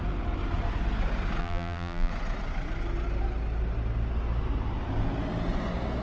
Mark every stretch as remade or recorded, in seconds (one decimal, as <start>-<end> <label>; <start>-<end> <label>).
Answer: 0.0-1.4 recorded; 1.4-2.1 remade; 2.1-6.0 recorded